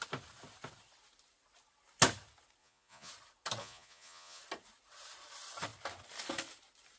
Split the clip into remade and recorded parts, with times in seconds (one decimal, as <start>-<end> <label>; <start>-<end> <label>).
0.0-2.6 recorded; 2.6-3.1 remade; 3.1-3.6 recorded; 3.6-4.4 remade; 4.4-7.0 recorded